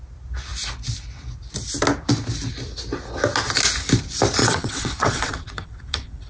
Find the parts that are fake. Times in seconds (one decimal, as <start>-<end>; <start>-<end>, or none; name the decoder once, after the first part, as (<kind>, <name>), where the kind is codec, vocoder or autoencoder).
4.4-6.3 (vocoder, WaveNeXt)